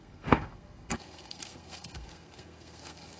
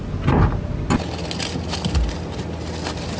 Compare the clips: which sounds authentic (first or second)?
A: second